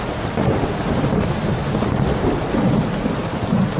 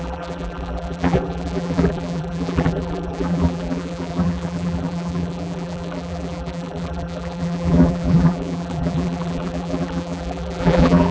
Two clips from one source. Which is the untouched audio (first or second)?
first